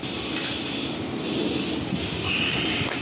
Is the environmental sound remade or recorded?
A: recorded